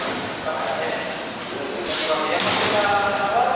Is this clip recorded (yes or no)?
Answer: yes